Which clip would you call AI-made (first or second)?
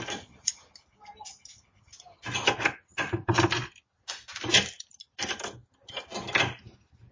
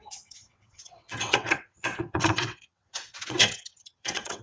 second